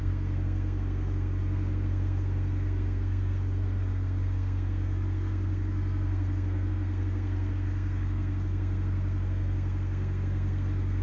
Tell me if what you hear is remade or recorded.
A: remade